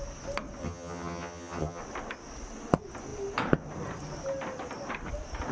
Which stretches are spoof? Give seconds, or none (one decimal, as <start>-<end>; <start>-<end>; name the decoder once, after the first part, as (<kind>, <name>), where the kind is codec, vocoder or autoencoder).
0.6-1.8 (vocoder, HiFi-GAN)